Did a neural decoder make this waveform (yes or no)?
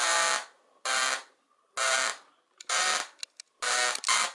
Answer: no